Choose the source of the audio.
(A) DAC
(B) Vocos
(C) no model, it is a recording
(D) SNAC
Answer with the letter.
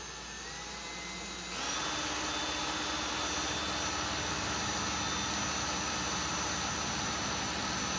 C